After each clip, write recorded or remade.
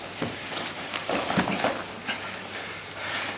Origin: recorded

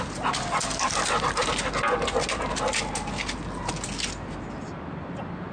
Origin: recorded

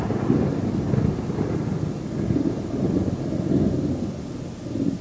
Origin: recorded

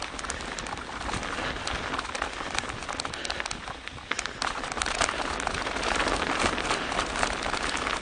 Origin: recorded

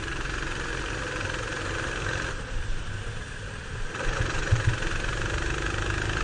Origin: recorded